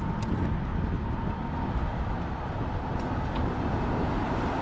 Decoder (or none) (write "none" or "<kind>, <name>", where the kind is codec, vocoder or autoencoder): none